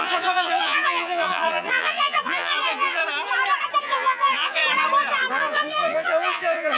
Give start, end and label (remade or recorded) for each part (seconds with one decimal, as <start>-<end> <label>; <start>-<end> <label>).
0.0-3.0 remade; 3.0-3.8 recorded; 3.8-4.6 remade; 4.6-5.3 recorded; 5.3-6.8 remade